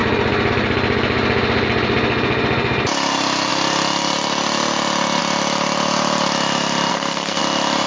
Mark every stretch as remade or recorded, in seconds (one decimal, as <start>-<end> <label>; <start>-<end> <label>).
0.0-6.9 recorded; 6.9-7.4 remade; 7.4-7.9 recorded